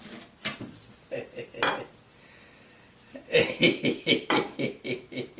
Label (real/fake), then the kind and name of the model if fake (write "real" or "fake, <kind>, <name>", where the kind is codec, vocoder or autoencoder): real